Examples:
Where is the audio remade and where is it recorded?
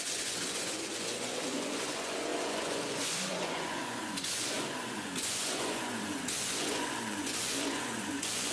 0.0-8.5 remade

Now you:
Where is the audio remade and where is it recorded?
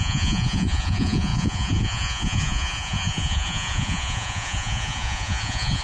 0.0-5.8 remade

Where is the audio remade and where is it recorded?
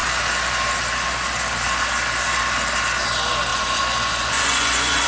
0.0-3.5 recorded; 3.5-5.1 remade